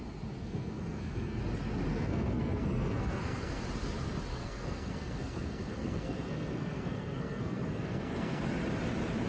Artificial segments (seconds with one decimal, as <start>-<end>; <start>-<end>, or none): 0.4-1.4; 1.9-3.6; 4.3-8.4